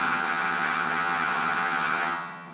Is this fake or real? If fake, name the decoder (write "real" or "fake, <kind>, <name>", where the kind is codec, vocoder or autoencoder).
fake, vocoder, HiFi-GAN